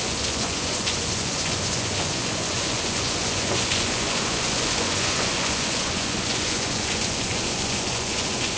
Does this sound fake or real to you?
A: fake